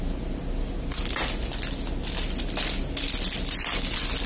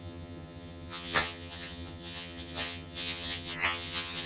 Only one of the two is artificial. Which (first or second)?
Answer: second